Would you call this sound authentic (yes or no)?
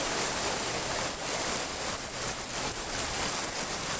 yes